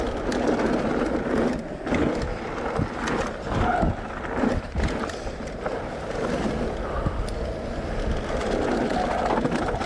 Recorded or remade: recorded